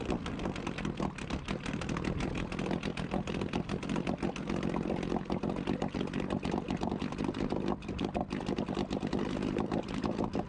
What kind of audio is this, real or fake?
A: real